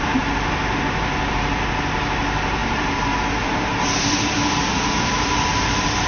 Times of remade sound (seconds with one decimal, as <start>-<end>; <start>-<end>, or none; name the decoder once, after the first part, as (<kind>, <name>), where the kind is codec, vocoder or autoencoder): 0.0-6.1 (vocoder, BigVGAN v2)